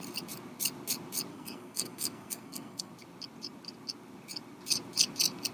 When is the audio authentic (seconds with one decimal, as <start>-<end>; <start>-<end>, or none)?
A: 0.0-1.3; 2.9-5.5